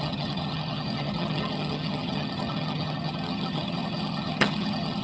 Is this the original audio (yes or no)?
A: no